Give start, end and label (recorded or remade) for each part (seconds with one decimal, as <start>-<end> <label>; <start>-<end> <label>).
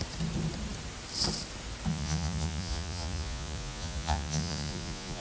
0.0-1.9 recorded; 1.9-5.2 remade